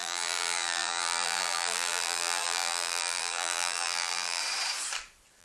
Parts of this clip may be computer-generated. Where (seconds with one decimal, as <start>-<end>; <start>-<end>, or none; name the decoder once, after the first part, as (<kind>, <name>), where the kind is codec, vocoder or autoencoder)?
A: 0.0-4.4 (vocoder, BigVGAN v2)